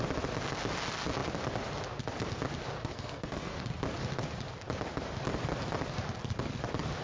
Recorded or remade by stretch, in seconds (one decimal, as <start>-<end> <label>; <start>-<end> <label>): 0.0-2.8 recorded; 2.8-3.6 remade; 3.6-7.0 recorded